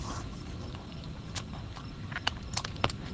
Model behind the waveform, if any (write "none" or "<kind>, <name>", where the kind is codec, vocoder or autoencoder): none